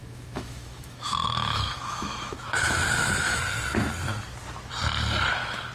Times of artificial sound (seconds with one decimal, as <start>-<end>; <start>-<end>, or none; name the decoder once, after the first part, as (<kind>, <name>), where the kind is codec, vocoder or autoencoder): 0.0-3.4 (autoencoder, DAC-VAE)